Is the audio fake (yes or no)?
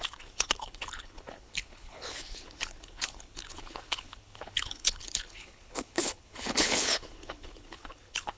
yes